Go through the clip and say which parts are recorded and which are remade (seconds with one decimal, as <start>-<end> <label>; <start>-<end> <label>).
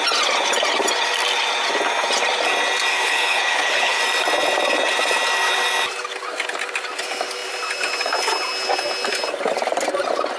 0.0-2.9 recorded; 2.9-4.0 remade; 4.0-10.4 recorded